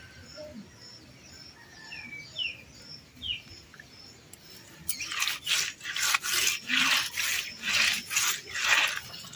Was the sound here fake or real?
real